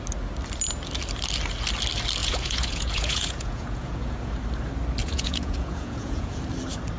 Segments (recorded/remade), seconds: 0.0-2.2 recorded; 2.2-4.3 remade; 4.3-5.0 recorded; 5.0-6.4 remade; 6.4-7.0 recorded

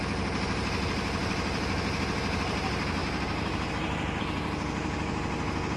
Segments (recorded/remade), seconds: 0.0-1.2 recorded; 1.2-2.1 remade; 2.1-3.0 recorded; 3.0-3.7 remade; 3.7-5.8 recorded